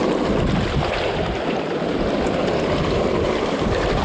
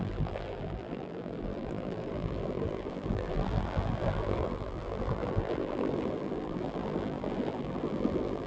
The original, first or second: first